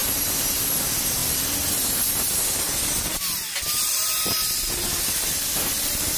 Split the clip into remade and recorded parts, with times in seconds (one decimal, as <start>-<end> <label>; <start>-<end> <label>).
0.0-6.2 recorded